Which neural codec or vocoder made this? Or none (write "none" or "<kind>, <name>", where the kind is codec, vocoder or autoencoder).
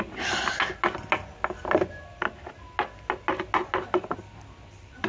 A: none